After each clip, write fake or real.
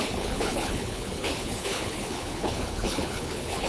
fake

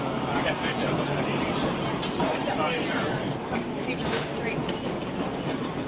fake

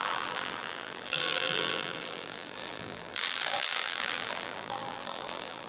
fake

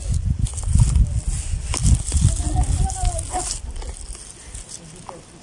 real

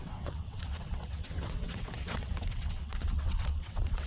fake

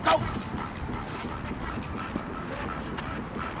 real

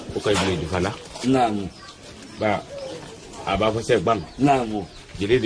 real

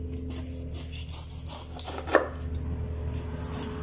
real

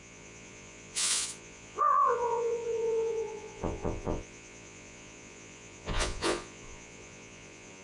fake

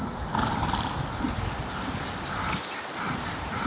real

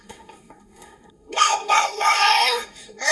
fake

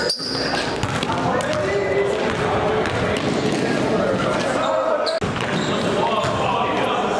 real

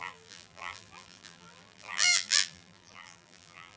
fake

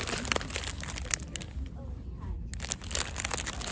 real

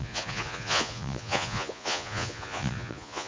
fake